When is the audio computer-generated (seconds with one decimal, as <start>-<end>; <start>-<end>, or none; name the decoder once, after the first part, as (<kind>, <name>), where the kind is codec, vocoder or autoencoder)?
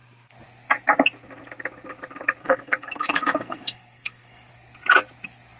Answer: 2.4-4.5 (codec, SNAC)